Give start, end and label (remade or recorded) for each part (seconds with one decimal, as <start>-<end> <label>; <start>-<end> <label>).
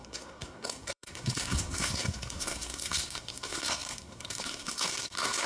0.0-5.5 remade